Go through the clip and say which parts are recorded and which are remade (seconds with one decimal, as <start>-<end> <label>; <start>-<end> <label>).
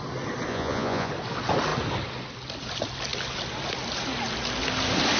0.0-0.5 recorded; 0.5-1.1 remade; 1.1-5.2 recorded